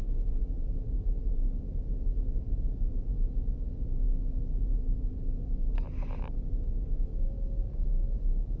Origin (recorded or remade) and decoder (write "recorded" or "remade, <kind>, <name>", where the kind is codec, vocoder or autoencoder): recorded